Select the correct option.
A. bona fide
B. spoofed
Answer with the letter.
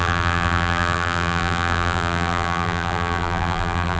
B